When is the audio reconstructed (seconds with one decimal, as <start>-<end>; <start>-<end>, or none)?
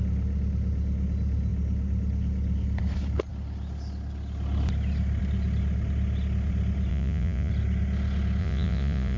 6.9-7.5; 8.4-9.2